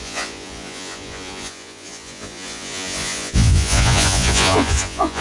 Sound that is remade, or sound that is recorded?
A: remade